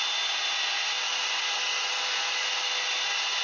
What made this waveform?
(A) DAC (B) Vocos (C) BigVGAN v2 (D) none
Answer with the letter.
D